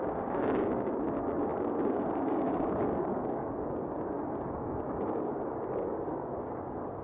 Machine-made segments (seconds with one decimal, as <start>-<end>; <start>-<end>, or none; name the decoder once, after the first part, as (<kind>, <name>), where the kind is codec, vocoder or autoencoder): 0.0-7.0 (codec, DAC)